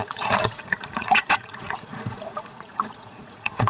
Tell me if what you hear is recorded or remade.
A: remade